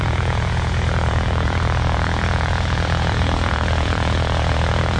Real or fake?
fake